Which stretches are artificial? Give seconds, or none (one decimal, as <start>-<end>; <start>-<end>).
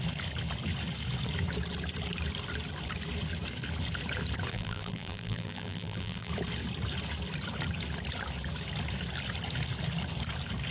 4.5-6.3